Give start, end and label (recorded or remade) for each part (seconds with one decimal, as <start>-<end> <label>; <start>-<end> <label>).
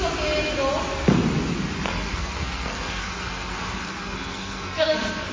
0.0-1.9 recorded; 1.9-5.3 remade